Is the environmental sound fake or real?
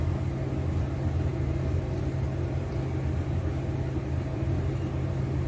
real